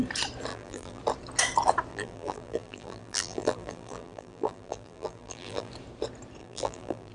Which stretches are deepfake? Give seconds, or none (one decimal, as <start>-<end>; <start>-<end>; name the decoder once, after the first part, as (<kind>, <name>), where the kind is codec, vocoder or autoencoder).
0.5-1.0 (vocoder, BigVGAN v2); 1.9-5.7; 6.4-7.1